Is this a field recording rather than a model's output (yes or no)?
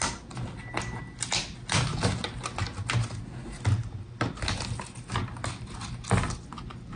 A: yes